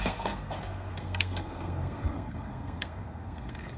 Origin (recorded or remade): remade